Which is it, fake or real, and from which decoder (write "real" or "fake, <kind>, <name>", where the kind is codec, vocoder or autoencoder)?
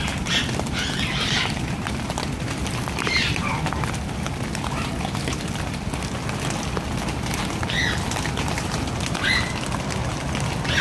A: real